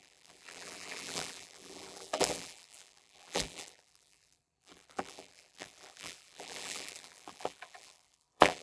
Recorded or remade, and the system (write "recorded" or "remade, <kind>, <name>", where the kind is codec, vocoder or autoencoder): remade, vocoder, BigVGAN v2